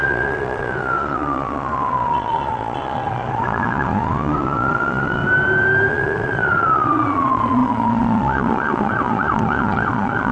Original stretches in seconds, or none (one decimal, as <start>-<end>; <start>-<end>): 5.2-5.9

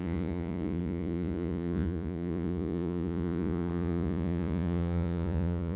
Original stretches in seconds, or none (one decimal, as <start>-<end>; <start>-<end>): none

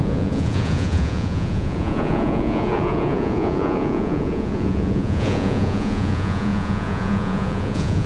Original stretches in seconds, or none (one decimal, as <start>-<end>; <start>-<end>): none

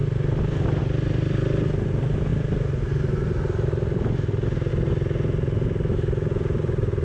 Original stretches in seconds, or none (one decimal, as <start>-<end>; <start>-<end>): 0.0-7.0

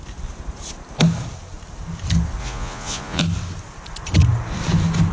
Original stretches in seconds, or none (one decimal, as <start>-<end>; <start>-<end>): 0.0-2.4; 3.2-5.1

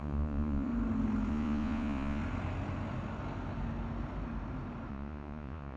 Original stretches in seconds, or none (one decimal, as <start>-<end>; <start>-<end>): 0.7-1.3; 2.2-4.9